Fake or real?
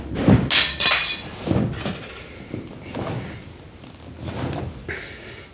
real